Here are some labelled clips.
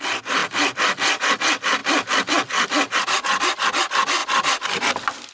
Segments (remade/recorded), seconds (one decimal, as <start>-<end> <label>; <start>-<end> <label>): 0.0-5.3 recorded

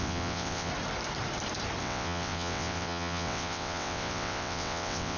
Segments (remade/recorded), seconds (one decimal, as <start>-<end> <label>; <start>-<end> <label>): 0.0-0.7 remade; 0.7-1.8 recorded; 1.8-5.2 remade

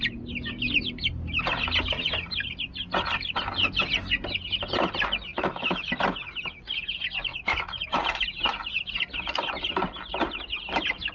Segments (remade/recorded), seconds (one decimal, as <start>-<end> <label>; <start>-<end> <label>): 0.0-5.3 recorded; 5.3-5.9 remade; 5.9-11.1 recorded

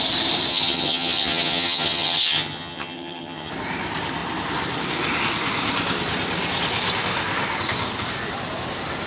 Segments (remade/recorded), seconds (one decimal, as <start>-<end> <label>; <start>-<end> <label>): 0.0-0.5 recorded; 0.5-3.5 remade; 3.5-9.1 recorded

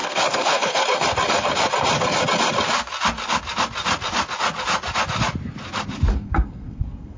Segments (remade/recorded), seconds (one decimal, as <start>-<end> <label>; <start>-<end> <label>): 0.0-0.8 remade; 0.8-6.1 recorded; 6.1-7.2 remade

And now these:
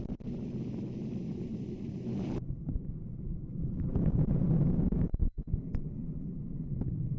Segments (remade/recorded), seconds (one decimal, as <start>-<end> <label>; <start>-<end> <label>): 0.0-1.5 recorded; 1.5-4.1 remade; 4.1-6.0 recorded; 6.0-6.6 remade; 6.6-7.2 recorded

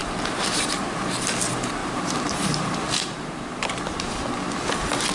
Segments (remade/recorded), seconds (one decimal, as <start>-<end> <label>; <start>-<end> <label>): 0.0-0.7 remade; 0.7-1.8 recorded; 1.8-4.1 remade; 4.1-5.1 recorded

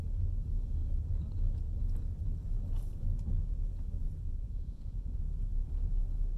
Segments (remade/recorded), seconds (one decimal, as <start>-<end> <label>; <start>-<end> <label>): 0.0-4.2 recorded; 4.2-5.2 remade; 5.2-6.4 recorded